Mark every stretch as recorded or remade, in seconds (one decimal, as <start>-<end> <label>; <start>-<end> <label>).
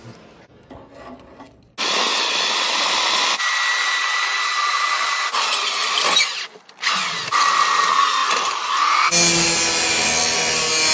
0.0-10.9 recorded